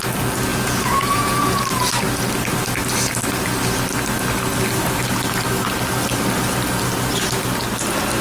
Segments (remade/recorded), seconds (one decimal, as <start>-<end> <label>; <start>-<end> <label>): 0.0-0.5 recorded; 0.5-1.6 remade; 1.6-8.2 recorded